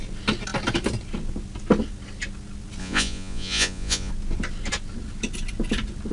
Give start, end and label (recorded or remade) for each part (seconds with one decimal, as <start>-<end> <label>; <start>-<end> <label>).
0.0-2.8 recorded; 2.8-4.1 remade; 4.1-6.1 recorded